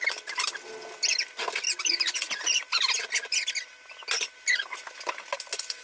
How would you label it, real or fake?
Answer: real